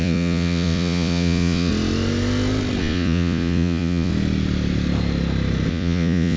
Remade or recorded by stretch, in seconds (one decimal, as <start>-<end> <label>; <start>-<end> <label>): 0.0-1.7 remade; 1.7-2.8 recorded; 2.8-4.1 remade; 4.1-5.7 recorded; 5.7-6.4 remade